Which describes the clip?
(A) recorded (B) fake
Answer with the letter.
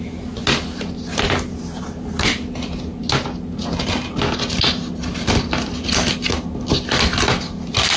A